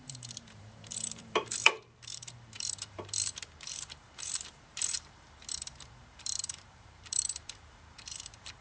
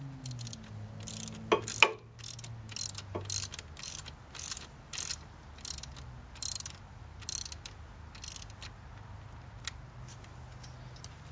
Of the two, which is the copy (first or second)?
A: first